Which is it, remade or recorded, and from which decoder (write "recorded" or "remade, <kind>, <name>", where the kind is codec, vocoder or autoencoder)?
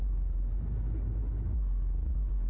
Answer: recorded